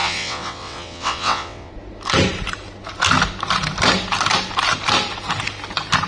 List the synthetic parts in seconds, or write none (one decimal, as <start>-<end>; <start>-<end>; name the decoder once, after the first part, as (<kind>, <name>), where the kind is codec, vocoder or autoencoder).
0.0-1.7 (vocoder, WaveNeXt)